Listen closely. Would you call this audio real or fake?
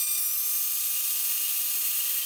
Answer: real